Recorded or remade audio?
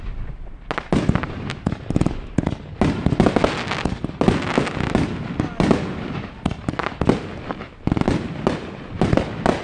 recorded